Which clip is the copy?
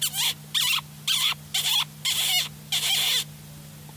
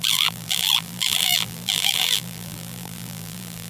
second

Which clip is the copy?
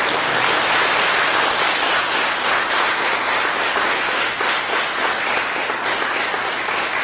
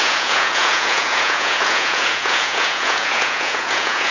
second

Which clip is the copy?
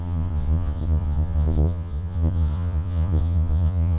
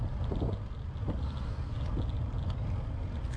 first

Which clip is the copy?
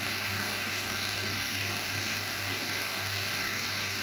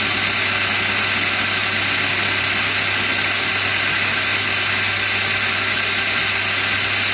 first